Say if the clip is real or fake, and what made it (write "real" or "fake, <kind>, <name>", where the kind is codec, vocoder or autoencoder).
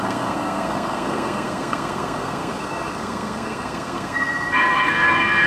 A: fake, codec, SNAC